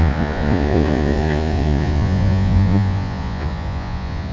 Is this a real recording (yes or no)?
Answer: no